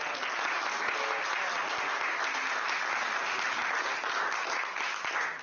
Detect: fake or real real